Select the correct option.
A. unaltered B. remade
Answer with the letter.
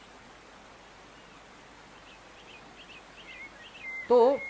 A